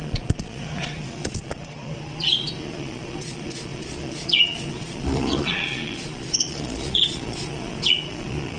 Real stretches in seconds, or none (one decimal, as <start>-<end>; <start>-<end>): none